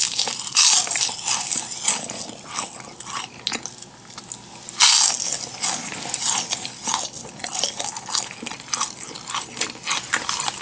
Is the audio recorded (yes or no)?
yes